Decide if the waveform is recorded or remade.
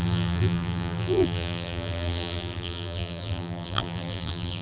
remade